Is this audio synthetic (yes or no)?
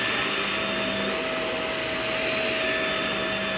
no